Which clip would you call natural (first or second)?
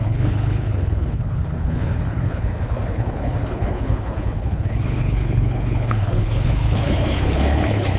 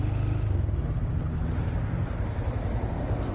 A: second